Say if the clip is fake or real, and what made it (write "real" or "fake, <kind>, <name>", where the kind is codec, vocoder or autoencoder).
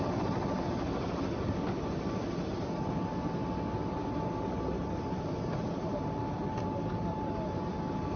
real